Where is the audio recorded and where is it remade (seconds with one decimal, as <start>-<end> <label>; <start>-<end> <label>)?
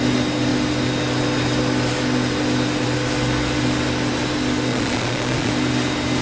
0.0-4.7 recorded; 4.7-5.5 remade; 5.5-6.2 recorded